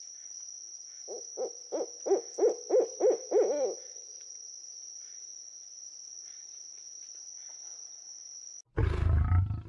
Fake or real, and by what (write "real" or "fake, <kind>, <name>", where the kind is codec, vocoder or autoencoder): real